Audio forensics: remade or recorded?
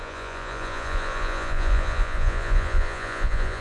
remade